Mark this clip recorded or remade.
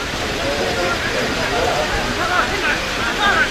recorded